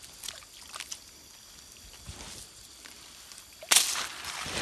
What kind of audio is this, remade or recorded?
recorded